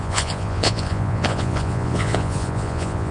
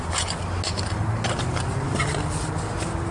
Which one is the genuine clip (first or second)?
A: second